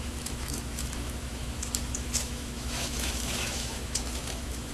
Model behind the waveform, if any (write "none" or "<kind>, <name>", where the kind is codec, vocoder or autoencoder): autoencoder, DAC-VAE